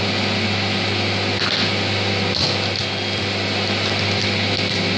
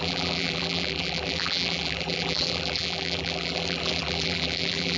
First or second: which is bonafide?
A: first